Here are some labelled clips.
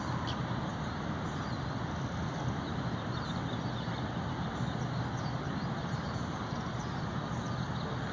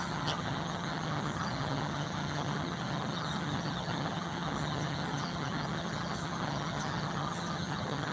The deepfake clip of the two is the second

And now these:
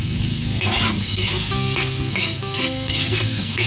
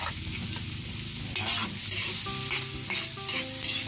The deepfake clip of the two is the first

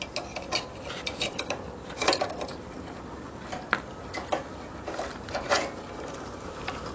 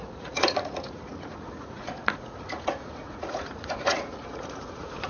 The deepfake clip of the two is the second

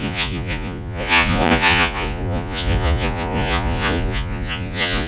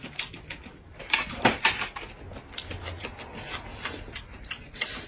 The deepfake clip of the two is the first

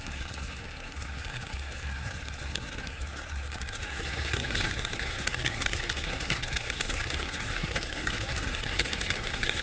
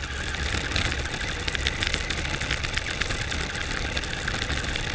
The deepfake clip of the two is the first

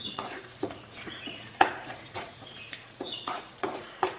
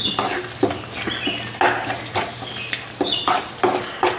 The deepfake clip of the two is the first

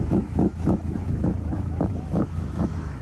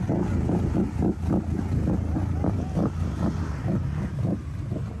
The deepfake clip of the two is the first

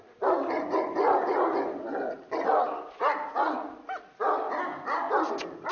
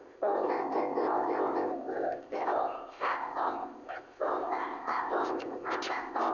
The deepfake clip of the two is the second